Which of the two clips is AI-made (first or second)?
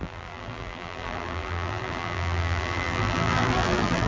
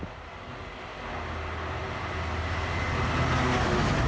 first